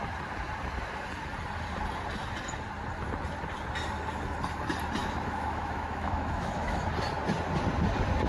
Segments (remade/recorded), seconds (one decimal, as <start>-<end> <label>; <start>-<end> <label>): 0.0-5.0 recorded; 5.0-6.8 remade; 6.8-8.3 recorded